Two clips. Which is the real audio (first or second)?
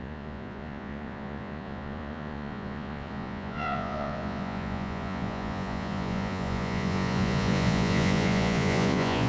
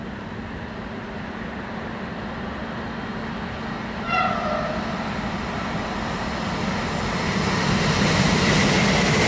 second